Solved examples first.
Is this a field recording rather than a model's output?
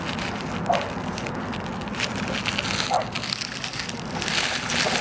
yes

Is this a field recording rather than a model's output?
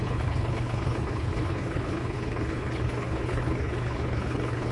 no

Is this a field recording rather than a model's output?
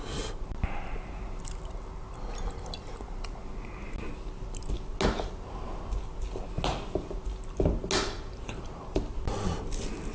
yes